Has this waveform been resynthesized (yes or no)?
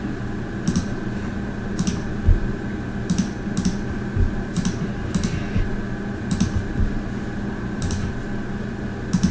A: no